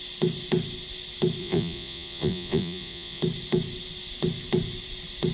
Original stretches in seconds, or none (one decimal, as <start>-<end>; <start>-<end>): 0.0-1.4; 3.2-5.3